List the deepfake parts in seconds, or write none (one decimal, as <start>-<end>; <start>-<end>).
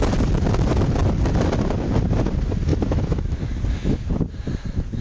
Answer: 2.7-3.5